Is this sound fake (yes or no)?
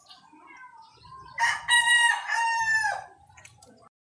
yes